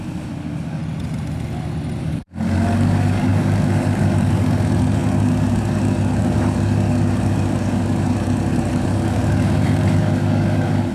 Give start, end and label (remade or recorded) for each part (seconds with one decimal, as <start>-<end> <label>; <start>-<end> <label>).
0.0-0.8 remade; 0.8-2.0 recorded; 2.0-10.9 remade